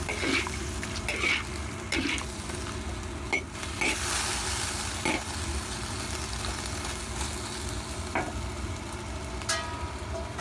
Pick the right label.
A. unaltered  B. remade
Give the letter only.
A